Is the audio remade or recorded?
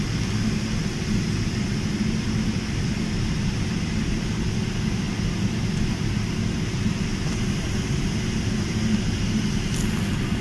recorded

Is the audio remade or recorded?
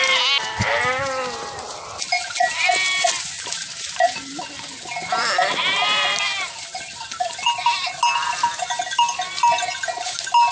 recorded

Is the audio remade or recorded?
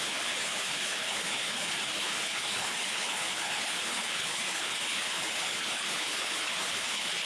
remade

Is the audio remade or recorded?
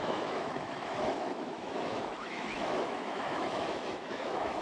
remade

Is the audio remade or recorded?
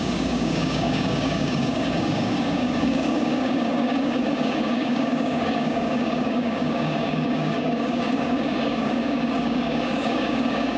remade